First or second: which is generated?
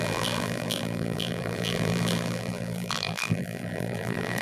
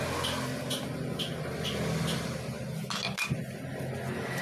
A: first